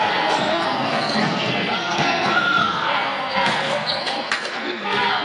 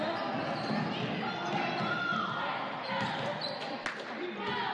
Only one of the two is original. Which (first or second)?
second